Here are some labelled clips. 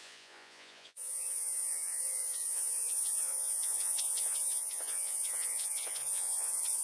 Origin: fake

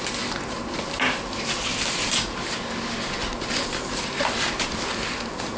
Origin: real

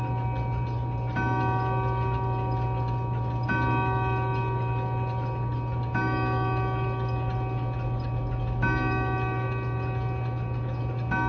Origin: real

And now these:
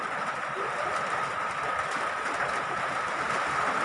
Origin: real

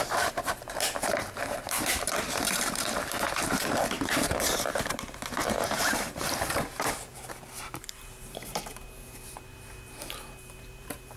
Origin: fake